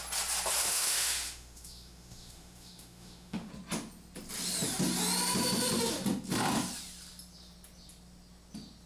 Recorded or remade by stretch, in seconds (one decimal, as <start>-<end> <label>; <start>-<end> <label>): 0.0-0.6 recorded; 0.6-3.5 remade; 3.5-8.9 recorded